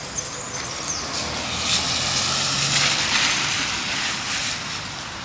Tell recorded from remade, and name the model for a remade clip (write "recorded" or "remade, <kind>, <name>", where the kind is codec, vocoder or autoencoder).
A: recorded